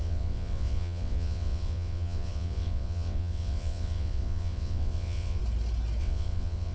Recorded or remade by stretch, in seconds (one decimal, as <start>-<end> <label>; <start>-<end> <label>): 0.0-5.4 remade; 5.4-6.0 recorded; 6.0-6.7 remade